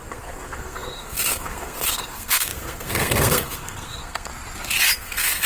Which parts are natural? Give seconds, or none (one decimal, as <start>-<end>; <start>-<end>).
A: 4.3-4.9